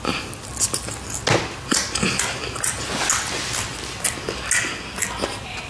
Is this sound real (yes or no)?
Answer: yes